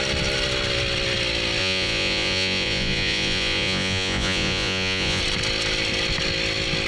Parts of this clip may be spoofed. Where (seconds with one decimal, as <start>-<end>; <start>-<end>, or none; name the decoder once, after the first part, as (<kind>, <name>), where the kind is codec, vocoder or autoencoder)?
1.6-5.2 (vocoder, Vocos)